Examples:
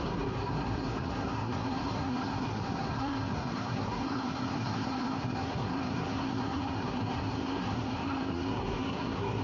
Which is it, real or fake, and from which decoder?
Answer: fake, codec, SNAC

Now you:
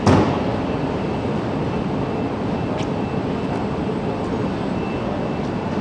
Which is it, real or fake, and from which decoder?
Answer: real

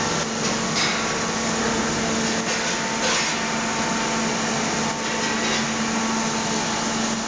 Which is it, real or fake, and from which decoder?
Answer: real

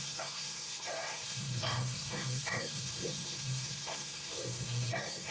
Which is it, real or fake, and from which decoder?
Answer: fake, codec, SNAC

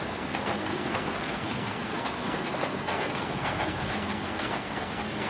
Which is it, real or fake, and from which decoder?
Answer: fake, codec, SNAC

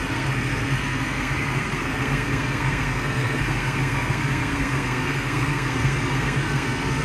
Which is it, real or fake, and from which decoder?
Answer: fake, codec, SNAC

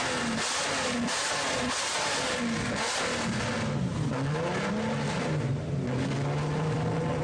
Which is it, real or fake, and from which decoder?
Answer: real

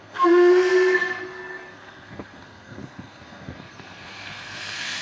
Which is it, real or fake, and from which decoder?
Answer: fake, codec, SNAC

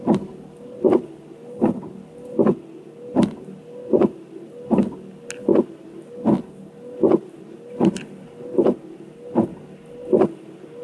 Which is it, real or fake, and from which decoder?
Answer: real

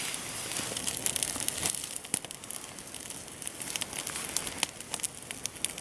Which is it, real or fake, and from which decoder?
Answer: real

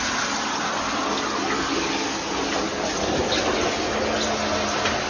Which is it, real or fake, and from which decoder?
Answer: real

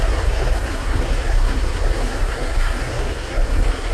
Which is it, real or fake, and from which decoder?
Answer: fake, codec, SNAC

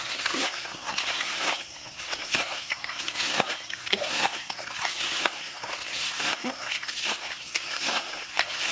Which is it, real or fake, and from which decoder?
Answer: fake, codec, SNAC